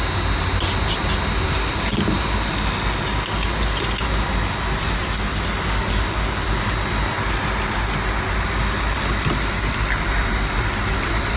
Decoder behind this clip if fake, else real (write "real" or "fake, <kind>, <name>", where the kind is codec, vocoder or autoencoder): real